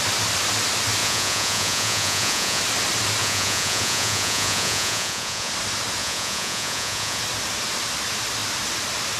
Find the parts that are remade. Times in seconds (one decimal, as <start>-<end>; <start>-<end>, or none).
1.0-2.6; 3.2-5.5; 6.0-7.2